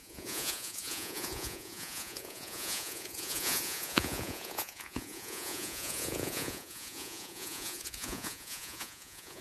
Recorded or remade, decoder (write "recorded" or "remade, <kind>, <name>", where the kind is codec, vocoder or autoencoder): remade, vocoder, Vocos